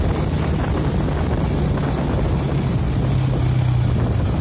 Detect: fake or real real